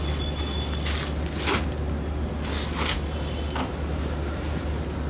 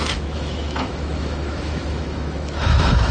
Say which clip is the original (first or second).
first